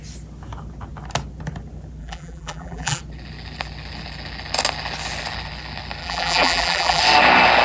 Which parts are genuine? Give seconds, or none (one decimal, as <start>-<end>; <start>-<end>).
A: 0.0-2.0; 3.0-6.0; 7.0-7.6